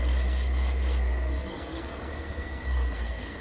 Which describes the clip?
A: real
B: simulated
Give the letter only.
B